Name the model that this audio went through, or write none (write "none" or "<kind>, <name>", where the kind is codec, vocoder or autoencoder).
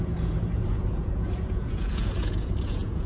vocoder, Vocos